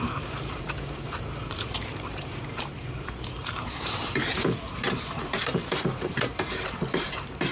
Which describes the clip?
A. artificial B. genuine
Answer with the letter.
A